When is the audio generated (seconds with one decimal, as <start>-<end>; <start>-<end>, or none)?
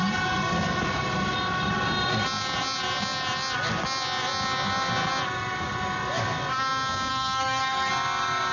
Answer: 7.1-7.9